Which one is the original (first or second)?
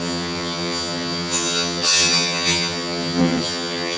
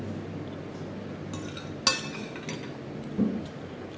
second